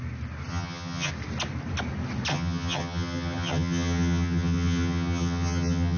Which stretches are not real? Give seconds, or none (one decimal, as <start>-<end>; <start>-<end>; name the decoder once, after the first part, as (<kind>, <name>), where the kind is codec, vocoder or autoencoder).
0.5-1.1 (vocoder, HiFi-GAN); 2.3-6.0